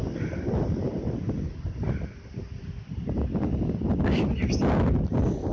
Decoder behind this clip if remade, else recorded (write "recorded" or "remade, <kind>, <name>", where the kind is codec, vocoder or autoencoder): recorded